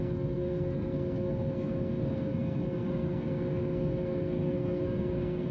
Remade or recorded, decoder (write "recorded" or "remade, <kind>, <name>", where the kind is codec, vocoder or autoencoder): remade, codec, SNAC